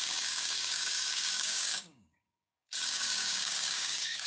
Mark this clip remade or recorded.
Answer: remade